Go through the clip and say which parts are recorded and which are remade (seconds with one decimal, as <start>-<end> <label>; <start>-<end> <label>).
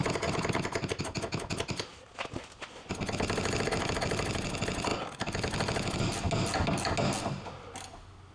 0.0-8.3 recorded